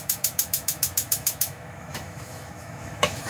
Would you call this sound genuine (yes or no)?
no